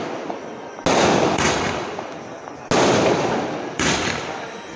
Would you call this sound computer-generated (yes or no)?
no